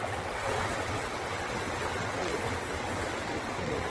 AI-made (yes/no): yes